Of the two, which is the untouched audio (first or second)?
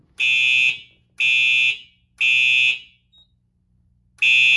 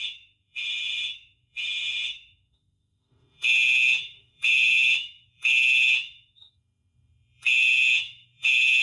first